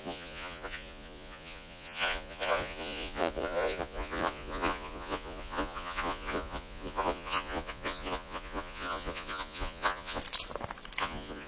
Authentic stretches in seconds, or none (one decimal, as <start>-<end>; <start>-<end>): 10.2-11.0